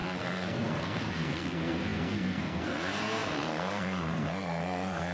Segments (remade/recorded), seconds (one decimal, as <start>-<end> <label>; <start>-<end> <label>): 0.0-5.1 remade